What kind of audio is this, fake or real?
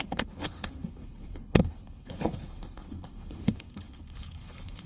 fake